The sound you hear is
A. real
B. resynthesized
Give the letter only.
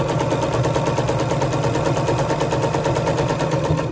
A